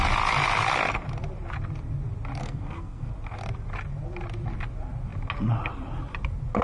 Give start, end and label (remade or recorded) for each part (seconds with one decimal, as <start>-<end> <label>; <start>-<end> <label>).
0.0-2.4 recorded; 2.4-3.1 remade; 3.1-6.6 recorded